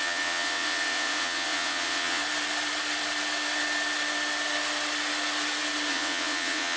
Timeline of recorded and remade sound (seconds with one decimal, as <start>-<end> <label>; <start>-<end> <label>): 0.0-2.2 remade; 2.2-5.9 recorded; 5.9-6.8 remade